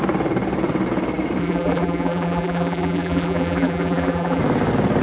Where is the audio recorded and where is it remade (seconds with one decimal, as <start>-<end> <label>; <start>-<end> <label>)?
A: 0.0-1.4 recorded; 1.4-4.4 remade; 4.4-5.0 recorded